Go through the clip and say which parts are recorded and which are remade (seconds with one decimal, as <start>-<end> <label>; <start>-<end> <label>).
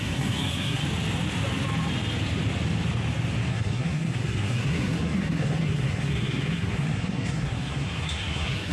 0.0-0.8 remade; 0.8-3.5 recorded; 3.5-8.7 remade